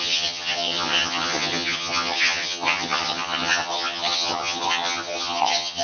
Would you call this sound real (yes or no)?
no